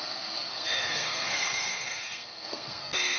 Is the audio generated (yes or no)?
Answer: yes